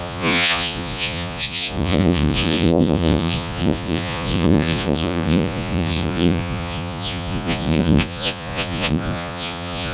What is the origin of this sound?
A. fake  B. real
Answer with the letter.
A